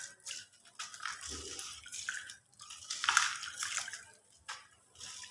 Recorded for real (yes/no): yes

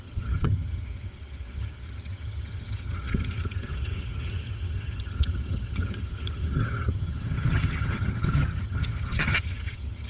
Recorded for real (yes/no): no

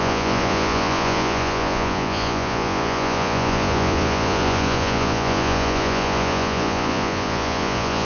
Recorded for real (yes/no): no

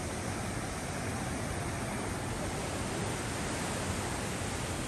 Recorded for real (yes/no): yes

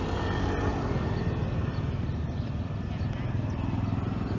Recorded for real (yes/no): yes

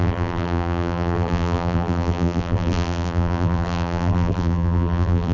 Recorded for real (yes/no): no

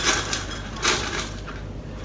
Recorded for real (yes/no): yes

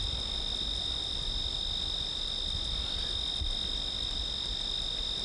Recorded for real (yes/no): yes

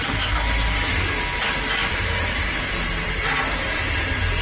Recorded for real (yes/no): yes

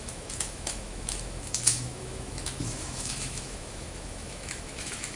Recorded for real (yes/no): no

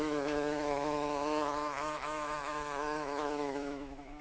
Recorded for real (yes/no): no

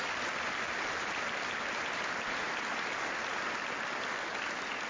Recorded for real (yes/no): yes